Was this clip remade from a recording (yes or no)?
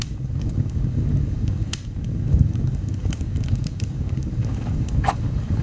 yes